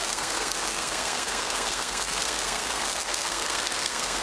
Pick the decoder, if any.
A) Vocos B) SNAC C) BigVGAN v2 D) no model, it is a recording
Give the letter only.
B